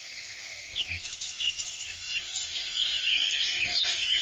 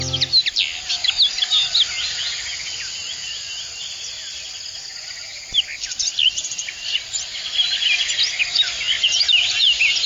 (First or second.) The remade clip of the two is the first